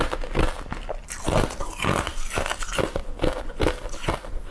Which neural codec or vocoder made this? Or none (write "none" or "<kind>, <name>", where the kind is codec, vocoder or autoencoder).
none